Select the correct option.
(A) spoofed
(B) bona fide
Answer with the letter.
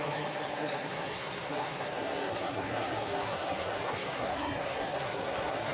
A